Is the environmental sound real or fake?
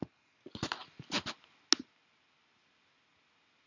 real